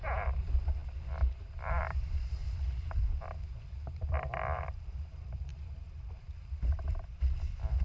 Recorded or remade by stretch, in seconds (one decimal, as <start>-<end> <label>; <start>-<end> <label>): 0.0-0.8 remade; 0.8-1.7 recorded; 1.7-2.4 remade; 2.4-3.0 recorded; 3.0-5.5 remade; 5.5-6.1 recorded; 6.1-7.8 remade